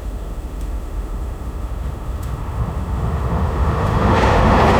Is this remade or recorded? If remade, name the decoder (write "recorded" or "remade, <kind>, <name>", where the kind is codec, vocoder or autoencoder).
remade, autoencoder, DAC-VAE